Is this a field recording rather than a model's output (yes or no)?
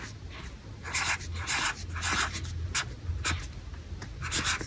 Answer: yes